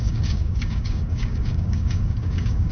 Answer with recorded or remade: remade